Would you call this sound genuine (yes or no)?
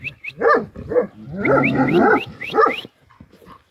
yes